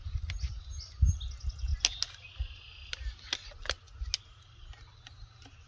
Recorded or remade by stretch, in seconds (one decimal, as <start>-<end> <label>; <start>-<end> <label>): 0.0-5.7 recorded